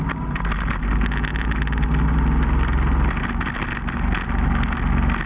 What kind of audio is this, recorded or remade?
recorded